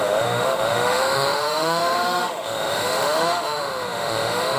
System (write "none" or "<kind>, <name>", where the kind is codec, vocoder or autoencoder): autoencoder, DAC-VAE